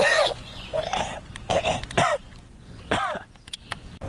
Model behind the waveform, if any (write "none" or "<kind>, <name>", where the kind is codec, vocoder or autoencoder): vocoder, Vocos